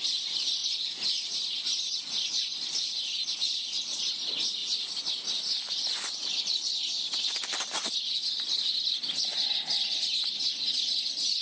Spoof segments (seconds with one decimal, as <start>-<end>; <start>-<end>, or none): none

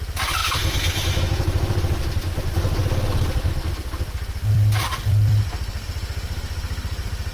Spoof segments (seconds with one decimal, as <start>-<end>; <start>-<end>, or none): 2.8-7.3

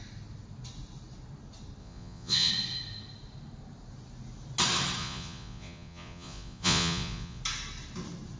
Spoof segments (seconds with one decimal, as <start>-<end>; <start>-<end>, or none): 1.8-2.5; 5.0-7.4

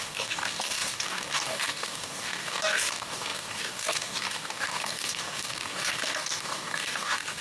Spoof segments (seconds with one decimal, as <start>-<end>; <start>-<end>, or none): 0.0-7.4

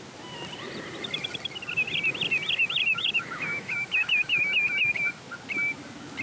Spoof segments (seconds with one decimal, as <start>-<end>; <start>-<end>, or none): 2.9-5.2